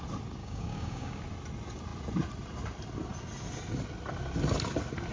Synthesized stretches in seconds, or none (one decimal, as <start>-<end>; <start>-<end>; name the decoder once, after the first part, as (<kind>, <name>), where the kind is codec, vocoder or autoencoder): 0.4-1.2 (codec, DAC)